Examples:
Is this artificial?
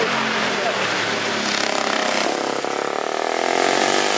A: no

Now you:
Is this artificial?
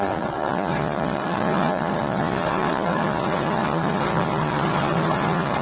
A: yes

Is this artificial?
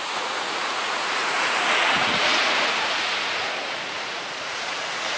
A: yes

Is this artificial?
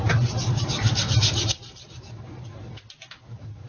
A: no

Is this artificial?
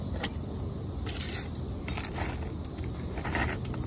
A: no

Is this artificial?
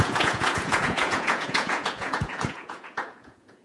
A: yes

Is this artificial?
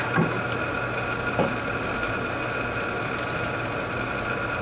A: no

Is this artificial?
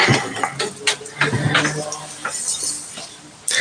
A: no